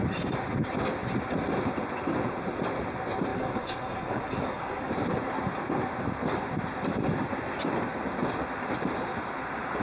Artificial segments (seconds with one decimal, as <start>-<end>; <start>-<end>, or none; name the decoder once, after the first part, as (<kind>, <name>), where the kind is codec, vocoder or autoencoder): 3.3-4.9 (codec, DAC)